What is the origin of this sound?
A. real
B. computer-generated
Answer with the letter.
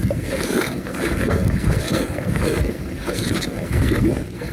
B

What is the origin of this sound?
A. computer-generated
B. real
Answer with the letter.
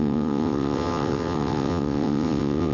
A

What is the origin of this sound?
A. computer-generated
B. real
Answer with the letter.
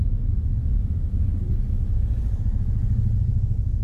B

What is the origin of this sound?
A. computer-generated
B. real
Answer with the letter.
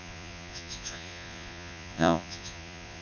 A